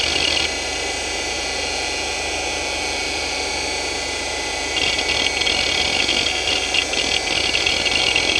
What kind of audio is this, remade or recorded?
recorded